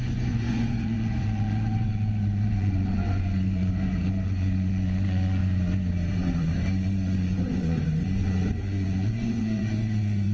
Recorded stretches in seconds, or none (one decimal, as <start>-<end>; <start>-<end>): 5.4-6.1